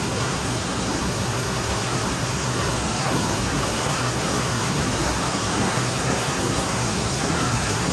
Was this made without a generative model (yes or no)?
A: no